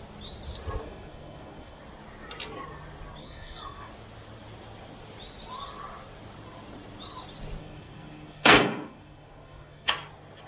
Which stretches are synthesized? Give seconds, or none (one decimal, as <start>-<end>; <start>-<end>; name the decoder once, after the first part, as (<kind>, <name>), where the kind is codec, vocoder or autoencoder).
0.8-1.8 (codec, SNAC); 3.2-3.9; 7.6-9.9